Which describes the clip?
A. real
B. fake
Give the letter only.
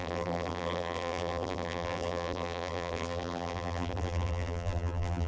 B